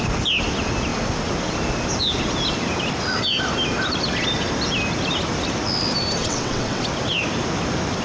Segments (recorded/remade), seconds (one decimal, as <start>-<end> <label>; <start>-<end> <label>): 0.0-6.2 recorded; 6.2-6.8 remade; 6.8-8.0 recorded